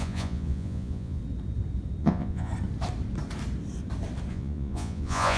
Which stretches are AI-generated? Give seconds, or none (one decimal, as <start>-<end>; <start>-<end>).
0.0-1.2; 2.0-2.5; 4.3-5.4